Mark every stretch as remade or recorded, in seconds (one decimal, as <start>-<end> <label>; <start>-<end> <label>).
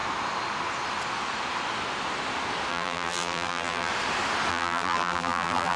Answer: 0.0-2.7 recorded; 2.7-3.9 remade; 3.9-4.5 recorded; 4.5-5.8 remade